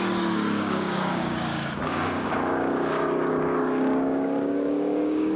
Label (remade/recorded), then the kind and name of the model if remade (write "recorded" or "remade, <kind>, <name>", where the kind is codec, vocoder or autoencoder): remade, codec, DAC